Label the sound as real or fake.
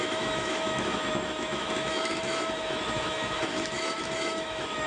fake